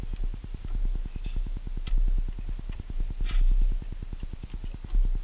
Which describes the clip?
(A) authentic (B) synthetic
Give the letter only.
A